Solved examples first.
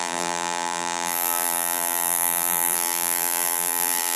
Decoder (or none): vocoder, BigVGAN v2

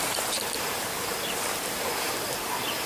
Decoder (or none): none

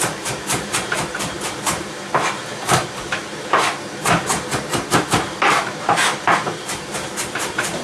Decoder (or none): vocoder, BigVGAN v2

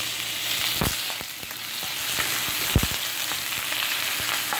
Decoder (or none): none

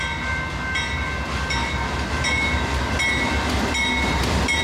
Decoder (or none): none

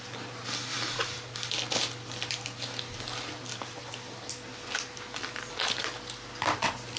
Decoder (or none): none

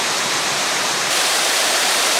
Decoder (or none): vocoder, BigVGAN v2